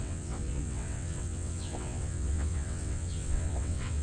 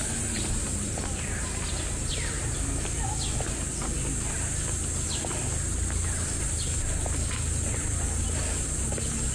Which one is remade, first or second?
first